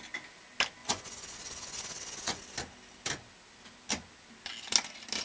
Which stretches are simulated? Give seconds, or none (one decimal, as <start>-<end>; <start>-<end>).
0.8-2.4